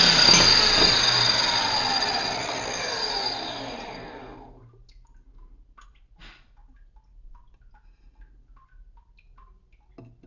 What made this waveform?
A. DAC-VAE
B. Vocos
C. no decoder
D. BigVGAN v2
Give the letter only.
C